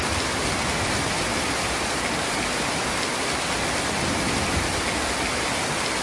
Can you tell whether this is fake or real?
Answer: real